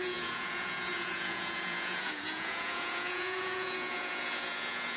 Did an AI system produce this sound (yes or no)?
yes